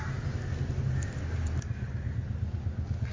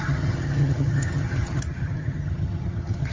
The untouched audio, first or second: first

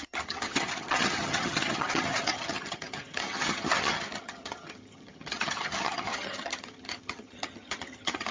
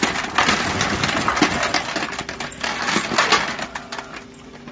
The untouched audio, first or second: second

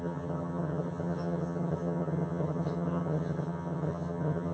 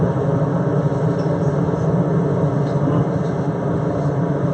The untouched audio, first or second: second